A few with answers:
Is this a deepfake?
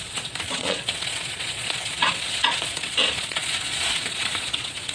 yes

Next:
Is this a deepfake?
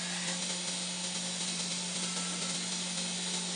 no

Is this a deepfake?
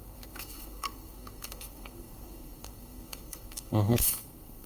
yes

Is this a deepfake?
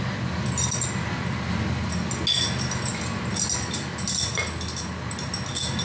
no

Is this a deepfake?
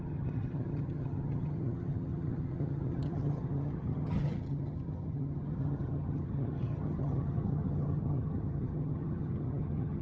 yes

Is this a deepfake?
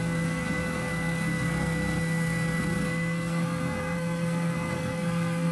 yes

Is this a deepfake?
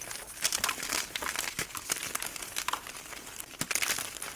no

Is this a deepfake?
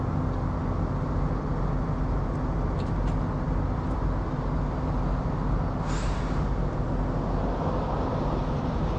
no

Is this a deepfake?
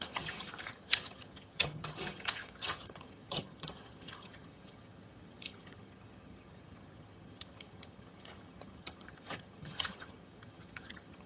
yes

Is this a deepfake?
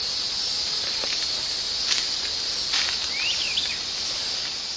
no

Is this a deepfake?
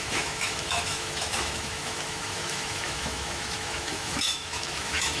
yes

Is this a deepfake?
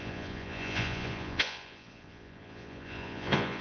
yes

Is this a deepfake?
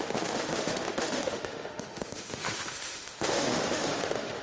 yes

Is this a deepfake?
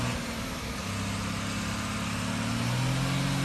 no